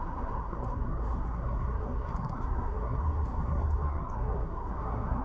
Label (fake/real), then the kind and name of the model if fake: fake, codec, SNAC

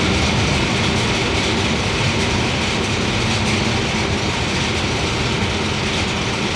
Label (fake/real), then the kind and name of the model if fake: real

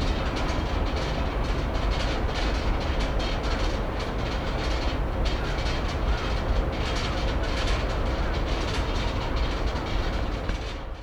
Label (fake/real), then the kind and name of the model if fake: real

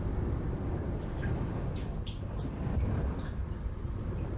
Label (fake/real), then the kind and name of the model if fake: real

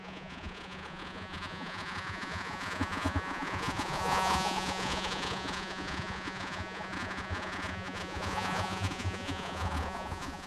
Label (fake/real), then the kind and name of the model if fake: fake, vocoder, Vocos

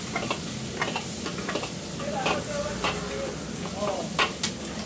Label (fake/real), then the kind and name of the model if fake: real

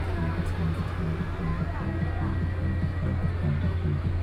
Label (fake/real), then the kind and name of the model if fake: real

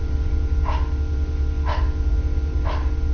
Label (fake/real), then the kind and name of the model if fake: real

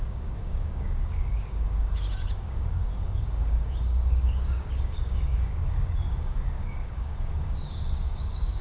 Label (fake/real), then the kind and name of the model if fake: fake, codec, DAC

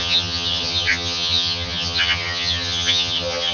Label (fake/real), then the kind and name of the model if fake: fake, vocoder, HiFi-GAN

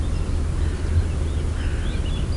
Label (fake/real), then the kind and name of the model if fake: real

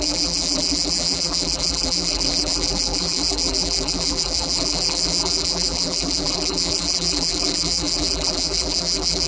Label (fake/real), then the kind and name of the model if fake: fake, vocoder, BigVGAN v2